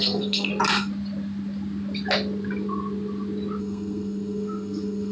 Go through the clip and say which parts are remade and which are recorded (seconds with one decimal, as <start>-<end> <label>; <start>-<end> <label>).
0.0-0.5 remade; 0.5-3.6 recorded; 3.6-5.1 remade